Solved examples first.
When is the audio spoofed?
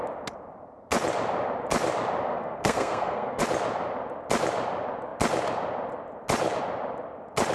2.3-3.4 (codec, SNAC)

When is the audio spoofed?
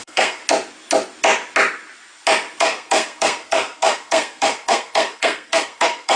0.0-0.4 (codec, SNAC); 2.6-6.2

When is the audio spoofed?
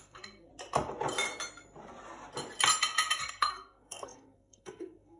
0.0-0.5 (codec, SNAC); 3.2-5.2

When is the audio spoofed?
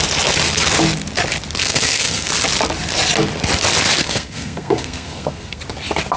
1.6-2.3 (codec, SNAC); 4.0-5.6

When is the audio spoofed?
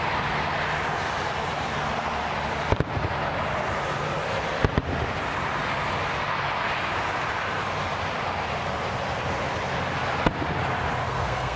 11.0-11.6 (codec, SNAC)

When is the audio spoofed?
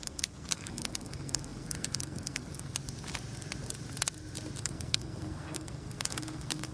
0.0-2.8 (codec, SNAC); 4.6-6.7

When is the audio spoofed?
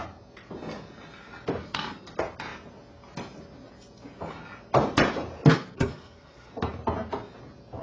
1.6-2.1 (codec, SNAC); 5.5-6.5